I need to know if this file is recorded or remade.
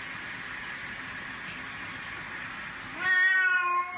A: recorded